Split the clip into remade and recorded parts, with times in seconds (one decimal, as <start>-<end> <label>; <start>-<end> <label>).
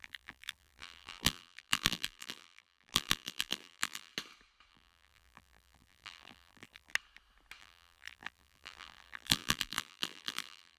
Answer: 0.0-4.1 remade; 4.1-4.7 recorded; 4.7-6.9 remade; 6.9-7.6 recorded; 7.6-10.8 remade